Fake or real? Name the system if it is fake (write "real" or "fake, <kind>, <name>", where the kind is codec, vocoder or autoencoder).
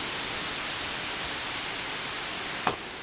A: fake, vocoder, BigVGAN v2